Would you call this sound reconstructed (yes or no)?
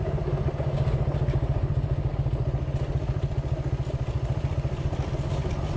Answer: no